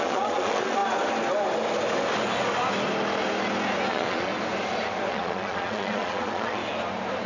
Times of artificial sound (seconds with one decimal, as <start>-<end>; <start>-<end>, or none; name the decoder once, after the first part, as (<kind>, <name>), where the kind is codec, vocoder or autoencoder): 0.0-0.8 (vocoder, Vocos); 3.9-4.3; 5.1-6.6

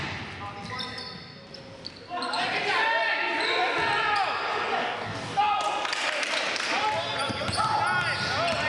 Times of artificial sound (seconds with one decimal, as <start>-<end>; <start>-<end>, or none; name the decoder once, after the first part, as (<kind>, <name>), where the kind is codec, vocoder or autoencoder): 4.8-5.4 (codec, DAC)

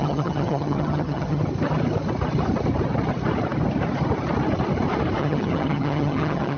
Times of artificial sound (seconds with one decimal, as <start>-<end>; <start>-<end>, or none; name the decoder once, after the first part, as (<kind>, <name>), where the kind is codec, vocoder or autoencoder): 0.0-1.4 (vocoder, HiFi-GAN); 5.2-6.6